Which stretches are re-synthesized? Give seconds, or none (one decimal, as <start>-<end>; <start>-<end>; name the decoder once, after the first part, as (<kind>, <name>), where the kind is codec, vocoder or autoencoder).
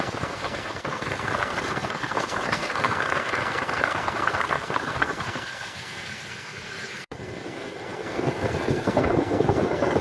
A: 0.0-10.0 (codec, SNAC)